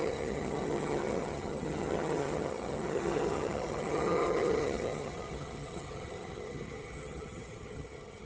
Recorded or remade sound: remade